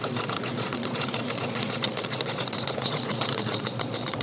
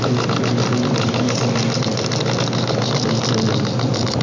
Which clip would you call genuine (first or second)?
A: second